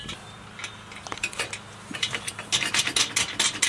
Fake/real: real